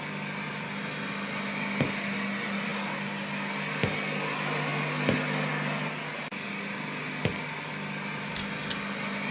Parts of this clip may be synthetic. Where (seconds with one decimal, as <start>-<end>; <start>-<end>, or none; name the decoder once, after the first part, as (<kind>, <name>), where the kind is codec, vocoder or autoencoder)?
none